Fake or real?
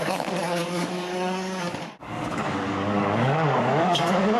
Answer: fake